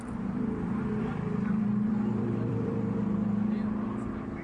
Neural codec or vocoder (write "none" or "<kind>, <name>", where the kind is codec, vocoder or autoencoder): vocoder, BigVGAN v2